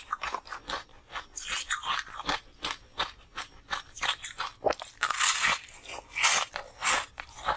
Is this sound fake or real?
real